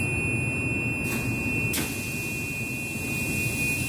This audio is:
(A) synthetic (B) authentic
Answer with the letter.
B